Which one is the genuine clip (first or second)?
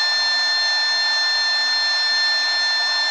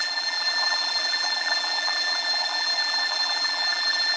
first